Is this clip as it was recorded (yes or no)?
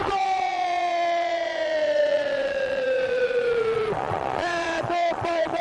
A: no